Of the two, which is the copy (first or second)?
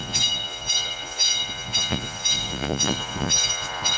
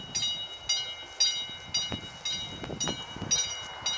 first